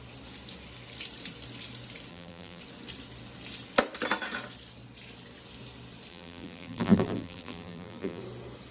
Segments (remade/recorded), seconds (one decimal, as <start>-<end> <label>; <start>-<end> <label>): 0.0-2.1 recorded; 2.1-2.6 remade; 2.6-6.1 recorded; 6.1-8.2 remade; 8.2-8.7 recorded